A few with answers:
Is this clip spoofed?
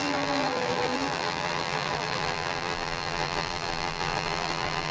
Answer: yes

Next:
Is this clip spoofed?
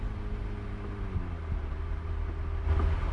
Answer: no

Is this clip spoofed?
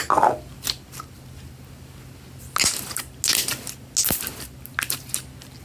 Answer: no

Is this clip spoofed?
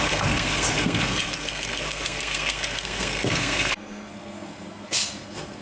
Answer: yes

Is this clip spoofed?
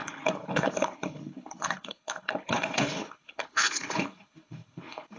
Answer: yes